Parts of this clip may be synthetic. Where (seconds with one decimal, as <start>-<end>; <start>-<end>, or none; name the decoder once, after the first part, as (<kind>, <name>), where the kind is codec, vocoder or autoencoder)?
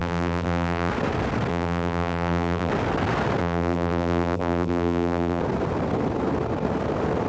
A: 0.0-0.9 (vocoder, BigVGAN v2); 1.5-2.7; 3.4-5.4